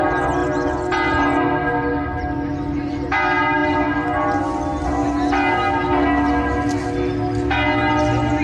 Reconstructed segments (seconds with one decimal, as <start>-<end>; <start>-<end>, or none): none